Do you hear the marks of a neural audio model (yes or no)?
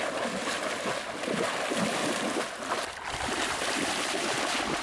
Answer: no